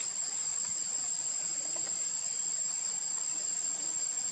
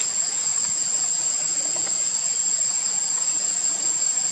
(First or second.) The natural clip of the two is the first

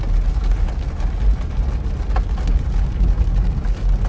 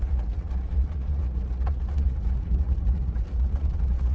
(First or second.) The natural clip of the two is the first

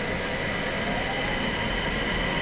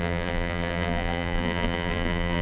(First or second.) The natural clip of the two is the first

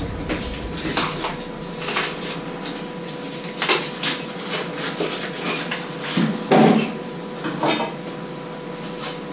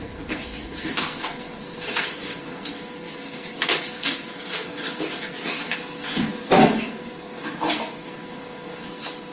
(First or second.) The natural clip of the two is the first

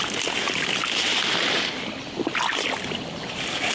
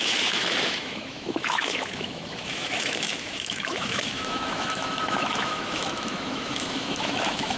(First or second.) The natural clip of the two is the first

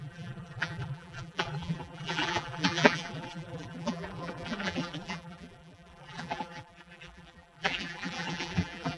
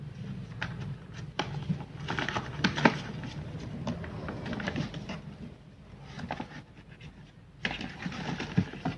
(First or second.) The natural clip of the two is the second